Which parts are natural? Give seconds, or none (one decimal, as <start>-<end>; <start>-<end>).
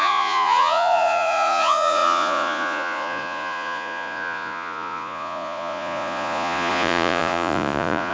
none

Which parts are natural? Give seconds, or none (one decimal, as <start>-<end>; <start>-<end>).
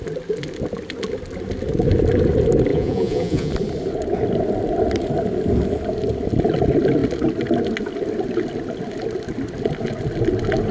0.0-2.7; 3.5-10.7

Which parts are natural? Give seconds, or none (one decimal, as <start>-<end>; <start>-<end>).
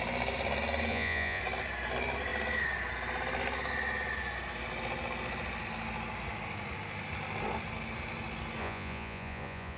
0.0-0.9; 1.4-8.6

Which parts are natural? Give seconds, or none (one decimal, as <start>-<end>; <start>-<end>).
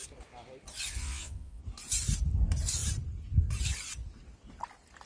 0.0-1.0; 1.6-5.1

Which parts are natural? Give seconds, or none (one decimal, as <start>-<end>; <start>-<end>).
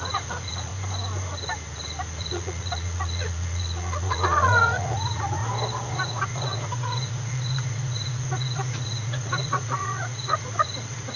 0.7-2.2; 5.4-5.9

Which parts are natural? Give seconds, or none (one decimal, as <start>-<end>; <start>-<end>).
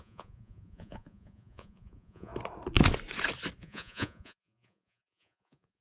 2.3-3.6